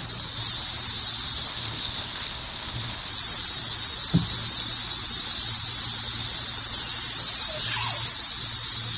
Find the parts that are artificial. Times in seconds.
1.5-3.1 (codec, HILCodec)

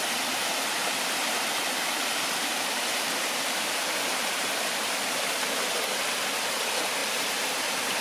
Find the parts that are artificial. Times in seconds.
0.8-5.6 (vocoder, BigVGAN v2)